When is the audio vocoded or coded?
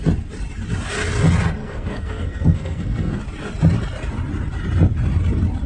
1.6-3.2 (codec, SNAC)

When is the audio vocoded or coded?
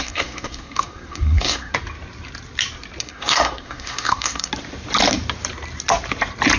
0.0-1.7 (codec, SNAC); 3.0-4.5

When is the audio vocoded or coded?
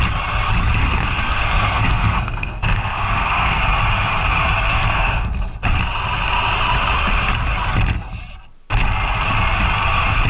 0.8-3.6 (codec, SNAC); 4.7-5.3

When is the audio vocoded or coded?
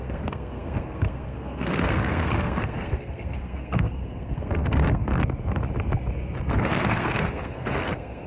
0.0-5.1 (codec, SNAC); 6.5-8.3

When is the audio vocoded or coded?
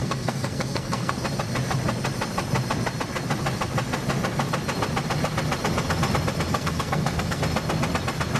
0.0-1.1 (codec, SNAC); 6.5-7.4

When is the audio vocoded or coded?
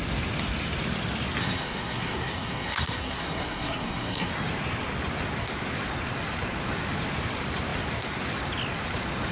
1.4-4.3 (codec, SNAC)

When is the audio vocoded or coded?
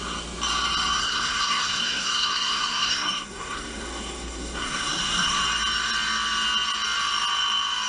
1.0-5.4 (codec, SNAC)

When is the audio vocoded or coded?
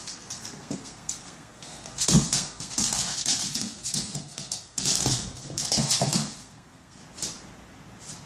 0.0-7.0 (codec, SNAC)